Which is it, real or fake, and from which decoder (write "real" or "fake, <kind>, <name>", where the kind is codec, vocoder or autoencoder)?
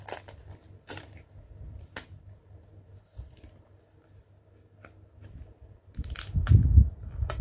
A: real